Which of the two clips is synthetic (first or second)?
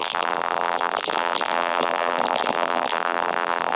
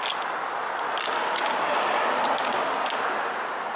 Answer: first